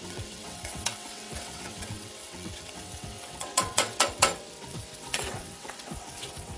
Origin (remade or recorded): remade